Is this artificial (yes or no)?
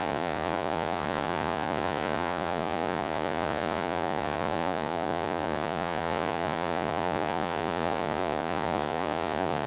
yes